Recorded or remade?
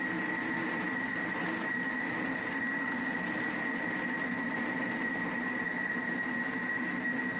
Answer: recorded